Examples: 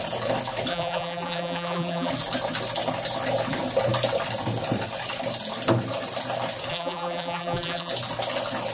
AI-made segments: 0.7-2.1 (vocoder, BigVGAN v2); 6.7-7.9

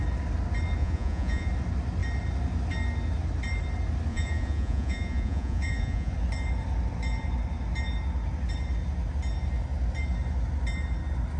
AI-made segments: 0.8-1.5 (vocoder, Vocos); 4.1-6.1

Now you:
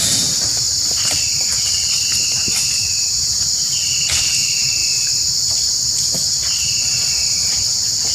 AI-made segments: none